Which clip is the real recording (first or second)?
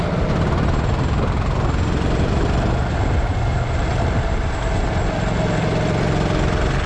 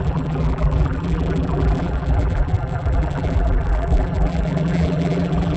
first